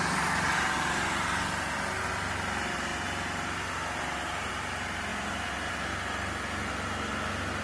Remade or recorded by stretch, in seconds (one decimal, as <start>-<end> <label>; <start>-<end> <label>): 0.0-7.6 recorded